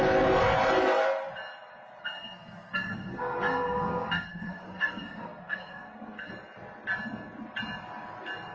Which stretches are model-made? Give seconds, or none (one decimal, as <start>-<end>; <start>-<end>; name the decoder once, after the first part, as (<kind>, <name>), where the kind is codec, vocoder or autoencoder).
2.0-6.3 (codec, SNAC)